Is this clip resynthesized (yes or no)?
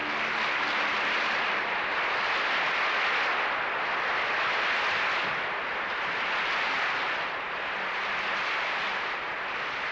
no